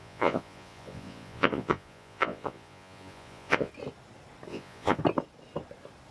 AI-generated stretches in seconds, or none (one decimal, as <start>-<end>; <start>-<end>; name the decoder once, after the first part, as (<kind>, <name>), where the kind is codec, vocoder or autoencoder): 0.0-3.7 (vocoder, Vocos); 4.5-5.0